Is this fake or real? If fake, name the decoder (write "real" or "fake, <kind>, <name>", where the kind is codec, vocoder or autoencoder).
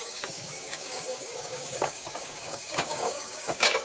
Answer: fake, codec, DAC